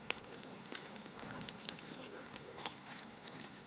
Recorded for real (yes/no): no